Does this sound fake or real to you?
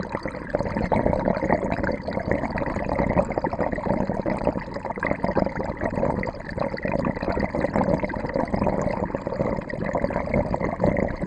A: real